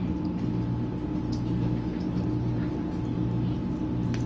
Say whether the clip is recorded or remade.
recorded